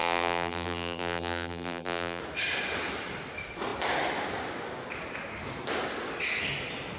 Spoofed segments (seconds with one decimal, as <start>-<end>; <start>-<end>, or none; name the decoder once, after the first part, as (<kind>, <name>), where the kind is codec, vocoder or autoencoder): 0.0-2.2 (vocoder, BigVGAN v2)

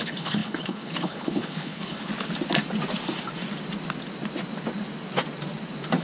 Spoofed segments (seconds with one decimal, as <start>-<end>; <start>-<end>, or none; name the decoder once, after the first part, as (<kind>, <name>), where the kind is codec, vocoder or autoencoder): 0.0-2.1 (codec, HILCodec)

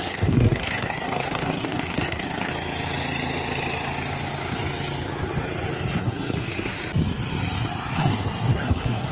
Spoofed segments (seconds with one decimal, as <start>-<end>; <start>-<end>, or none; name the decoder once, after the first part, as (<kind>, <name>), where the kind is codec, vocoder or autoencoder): 0.0-2.5 (codec, SNAC); 6.0-6.8; 7.9-9.1

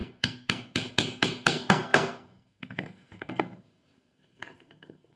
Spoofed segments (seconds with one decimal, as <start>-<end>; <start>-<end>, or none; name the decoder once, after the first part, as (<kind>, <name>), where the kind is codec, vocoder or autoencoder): 0.0-5.2 (codec, SNAC)